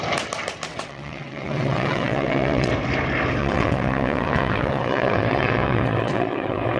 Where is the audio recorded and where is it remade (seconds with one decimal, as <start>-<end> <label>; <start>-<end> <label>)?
0.0-0.7 recorded; 0.7-2.7 remade; 2.7-3.4 recorded; 3.4-6.8 remade